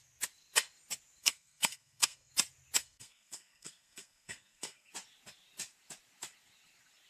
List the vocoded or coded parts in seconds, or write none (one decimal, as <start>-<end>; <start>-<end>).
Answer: 1.2-2.3; 2.8-4.9